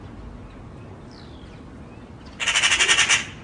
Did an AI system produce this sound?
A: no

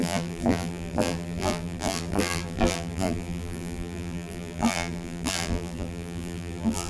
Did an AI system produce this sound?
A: yes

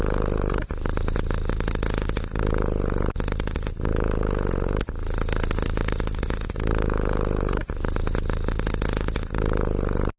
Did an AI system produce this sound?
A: no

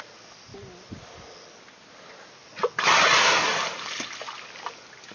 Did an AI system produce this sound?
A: no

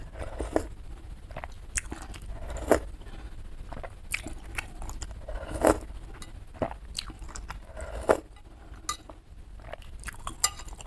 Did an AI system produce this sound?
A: no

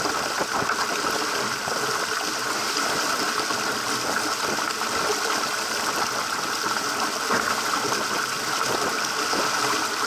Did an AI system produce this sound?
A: no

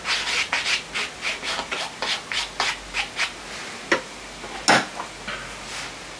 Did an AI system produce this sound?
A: no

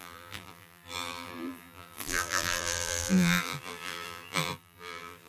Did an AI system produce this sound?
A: yes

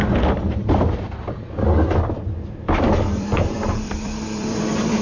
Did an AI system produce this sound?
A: yes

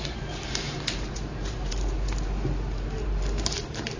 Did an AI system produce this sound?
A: yes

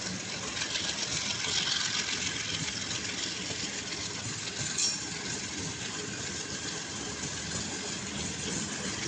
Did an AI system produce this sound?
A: no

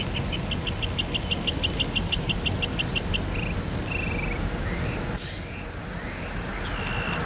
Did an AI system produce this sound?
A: no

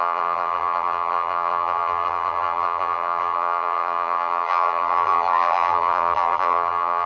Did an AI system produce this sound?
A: yes